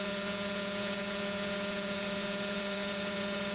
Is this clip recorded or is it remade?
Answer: remade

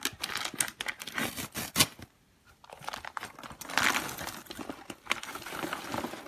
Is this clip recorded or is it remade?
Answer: recorded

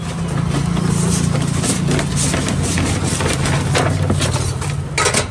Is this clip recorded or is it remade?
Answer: recorded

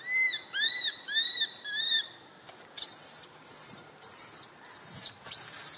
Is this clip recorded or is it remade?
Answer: recorded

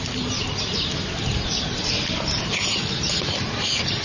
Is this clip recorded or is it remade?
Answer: recorded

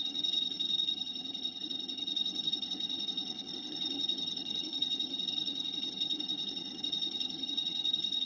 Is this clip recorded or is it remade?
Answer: remade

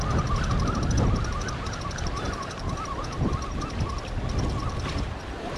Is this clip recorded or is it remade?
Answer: recorded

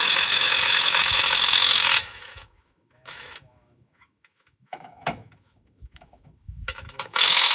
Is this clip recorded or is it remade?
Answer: remade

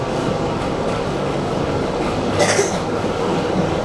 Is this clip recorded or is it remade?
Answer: remade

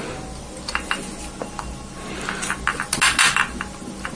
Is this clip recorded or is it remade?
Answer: recorded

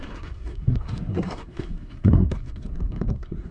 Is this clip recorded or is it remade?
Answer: remade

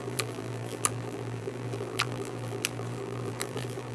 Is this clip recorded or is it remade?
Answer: remade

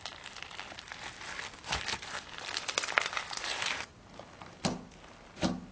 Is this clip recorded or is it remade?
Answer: recorded